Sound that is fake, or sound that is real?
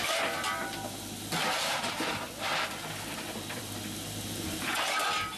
fake